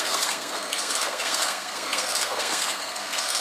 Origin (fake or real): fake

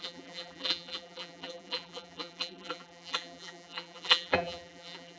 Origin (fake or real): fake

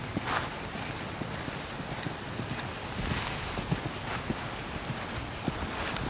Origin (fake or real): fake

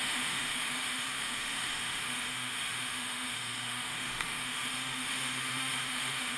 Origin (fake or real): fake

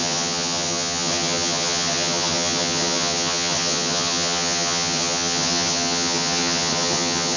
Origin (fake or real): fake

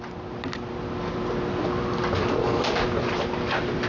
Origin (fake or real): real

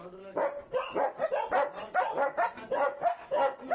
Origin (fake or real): real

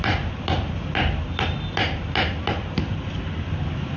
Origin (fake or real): real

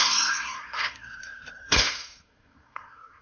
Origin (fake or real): fake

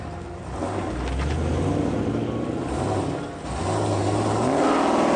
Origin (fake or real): real